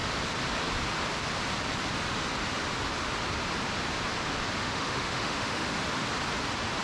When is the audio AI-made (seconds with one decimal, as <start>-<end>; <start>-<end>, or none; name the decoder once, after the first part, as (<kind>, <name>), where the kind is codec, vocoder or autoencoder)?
4.6-5.8 (autoencoder, DAC-VAE)